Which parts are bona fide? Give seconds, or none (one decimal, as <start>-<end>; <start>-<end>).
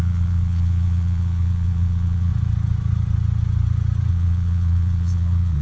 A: 2.3-4.1